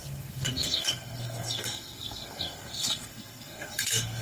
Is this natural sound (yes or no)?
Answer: no